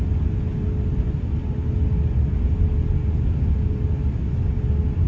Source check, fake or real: real